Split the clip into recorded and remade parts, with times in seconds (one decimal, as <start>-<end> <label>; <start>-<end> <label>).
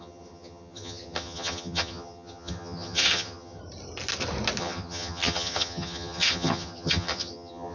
0.0-3.6 remade; 3.6-4.6 recorded; 4.6-7.7 remade